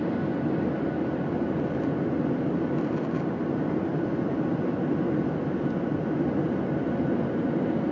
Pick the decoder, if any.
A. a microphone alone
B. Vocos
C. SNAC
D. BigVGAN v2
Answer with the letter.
A